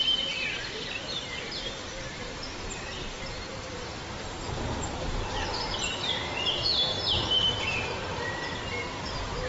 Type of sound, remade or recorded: remade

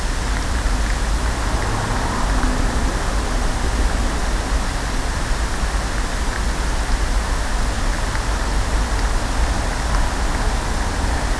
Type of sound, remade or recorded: recorded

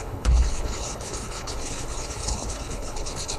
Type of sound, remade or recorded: remade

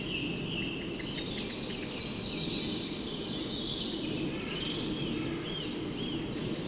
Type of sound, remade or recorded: recorded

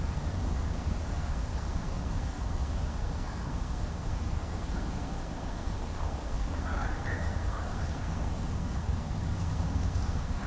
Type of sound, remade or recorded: remade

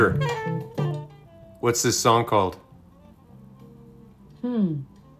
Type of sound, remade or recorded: recorded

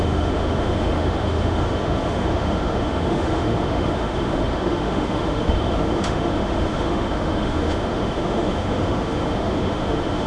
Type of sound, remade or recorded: remade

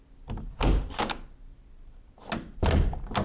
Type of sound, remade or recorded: recorded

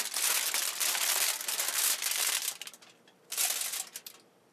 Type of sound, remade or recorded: recorded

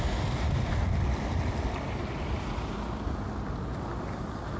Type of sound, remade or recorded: recorded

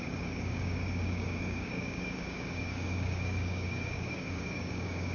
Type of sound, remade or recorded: remade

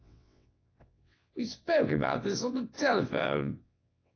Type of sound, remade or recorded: remade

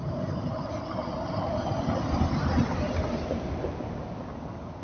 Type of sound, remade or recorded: recorded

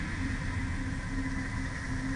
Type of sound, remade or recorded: recorded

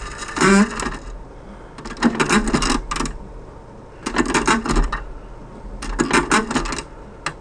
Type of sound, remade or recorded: recorded